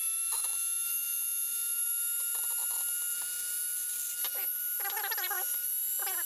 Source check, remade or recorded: remade